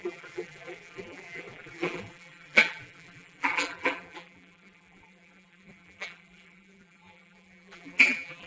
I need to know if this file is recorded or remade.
remade